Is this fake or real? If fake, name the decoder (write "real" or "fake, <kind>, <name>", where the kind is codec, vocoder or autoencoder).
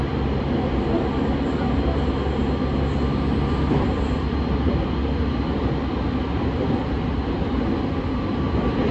real